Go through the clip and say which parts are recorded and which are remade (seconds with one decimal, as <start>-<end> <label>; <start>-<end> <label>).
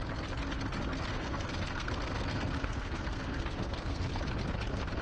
0.0-1.1 recorded; 1.1-4.1 remade; 4.1-5.0 recorded